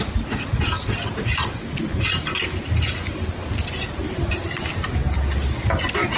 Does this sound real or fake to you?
real